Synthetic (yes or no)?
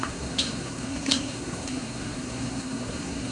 yes